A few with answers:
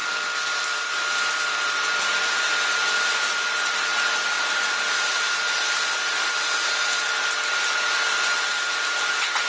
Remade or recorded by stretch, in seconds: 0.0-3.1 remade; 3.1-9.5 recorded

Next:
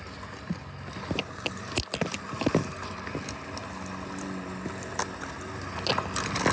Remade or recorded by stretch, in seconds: 0.0-6.5 recorded

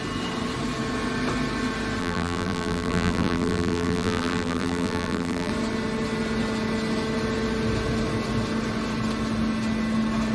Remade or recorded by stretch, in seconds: 0.0-2.0 recorded; 2.0-5.5 remade; 5.5-10.3 recorded

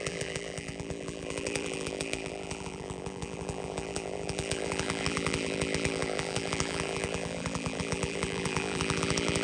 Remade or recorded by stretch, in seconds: 0.0-9.4 remade

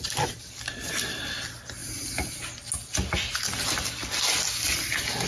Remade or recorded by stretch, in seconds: 0.0-1.8 recorded; 1.8-2.5 remade; 2.5-5.3 recorded

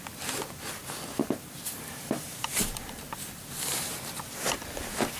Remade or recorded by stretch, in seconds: 0.0-0.8 recorded; 0.8-3.9 remade; 3.9-5.2 recorded